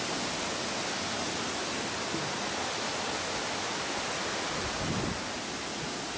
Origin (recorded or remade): recorded